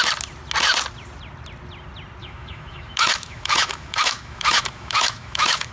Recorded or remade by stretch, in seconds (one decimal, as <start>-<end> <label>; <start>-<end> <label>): 0.0-2.2 recorded; 2.2-5.7 remade